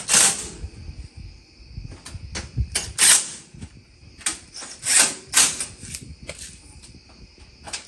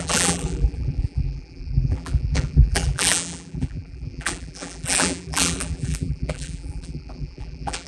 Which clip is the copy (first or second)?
second